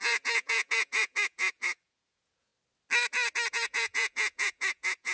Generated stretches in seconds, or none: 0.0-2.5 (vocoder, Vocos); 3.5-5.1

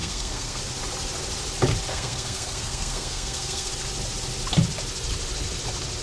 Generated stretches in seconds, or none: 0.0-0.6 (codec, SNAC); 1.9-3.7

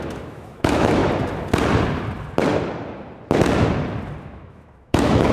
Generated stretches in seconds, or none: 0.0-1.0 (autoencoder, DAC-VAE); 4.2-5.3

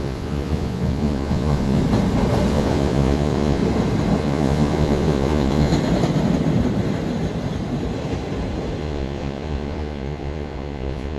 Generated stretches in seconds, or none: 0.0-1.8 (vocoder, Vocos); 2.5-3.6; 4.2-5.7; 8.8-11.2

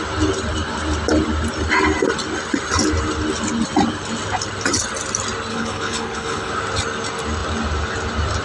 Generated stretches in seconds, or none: 5.5-6.5 (codec, HILCodec)